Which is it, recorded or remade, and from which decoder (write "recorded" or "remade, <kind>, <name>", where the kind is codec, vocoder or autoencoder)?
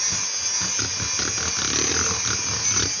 recorded